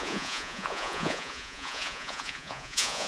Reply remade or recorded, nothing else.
remade